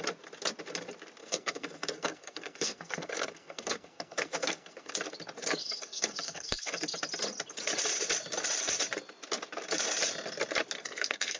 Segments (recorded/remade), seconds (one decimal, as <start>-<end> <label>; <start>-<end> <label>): 0.0-1.2 recorded; 1.2-4.9 remade; 4.9-5.6 recorded; 5.6-6.8 remade; 6.8-10.8 recorded; 10.8-11.4 remade